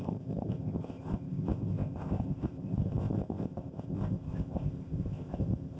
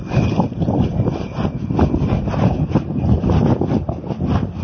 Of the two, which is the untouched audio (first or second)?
second